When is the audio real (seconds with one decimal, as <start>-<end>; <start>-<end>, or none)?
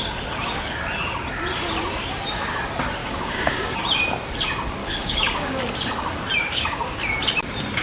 0.0-3.0; 3.8-4.8; 5.6-6.4; 7.0-7.8